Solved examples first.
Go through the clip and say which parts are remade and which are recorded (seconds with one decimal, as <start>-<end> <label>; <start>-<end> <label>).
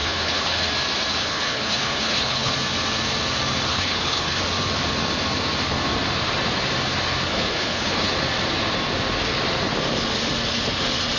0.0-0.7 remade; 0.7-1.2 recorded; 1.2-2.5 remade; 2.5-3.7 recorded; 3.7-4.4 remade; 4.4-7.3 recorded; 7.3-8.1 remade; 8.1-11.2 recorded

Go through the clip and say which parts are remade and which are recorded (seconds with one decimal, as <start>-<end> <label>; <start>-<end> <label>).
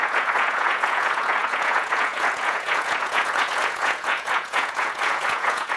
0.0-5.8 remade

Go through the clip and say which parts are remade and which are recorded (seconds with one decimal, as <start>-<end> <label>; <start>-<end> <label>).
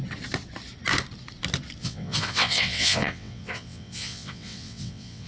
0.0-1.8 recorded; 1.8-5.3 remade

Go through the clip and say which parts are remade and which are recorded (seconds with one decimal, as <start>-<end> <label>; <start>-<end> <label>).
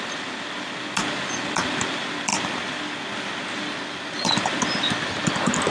0.0-5.7 recorded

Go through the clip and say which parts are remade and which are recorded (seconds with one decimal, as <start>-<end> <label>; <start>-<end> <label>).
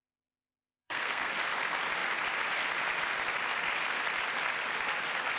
0.0-0.8 recorded; 0.8-1.3 remade; 1.3-5.4 recorded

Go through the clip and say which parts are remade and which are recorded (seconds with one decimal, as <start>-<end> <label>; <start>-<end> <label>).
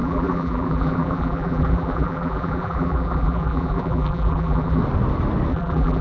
0.0-4.8 remade; 4.8-5.5 recorded; 5.5-6.0 remade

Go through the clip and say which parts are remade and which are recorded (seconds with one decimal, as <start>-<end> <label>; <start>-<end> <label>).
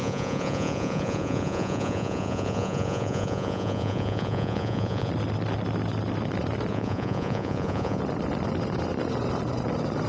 0.0-5.1 remade; 5.1-6.7 recorded; 6.7-8.0 remade; 8.0-10.1 recorded